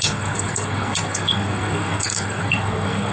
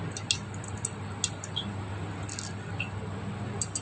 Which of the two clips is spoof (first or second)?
first